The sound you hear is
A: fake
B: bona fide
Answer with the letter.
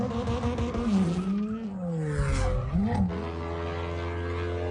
B